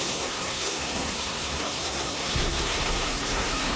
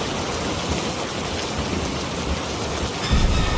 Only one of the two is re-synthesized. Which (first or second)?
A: first